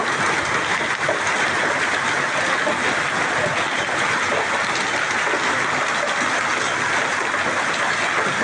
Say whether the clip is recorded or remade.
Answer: recorded